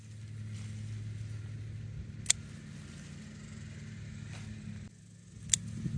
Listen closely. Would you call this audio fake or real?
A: real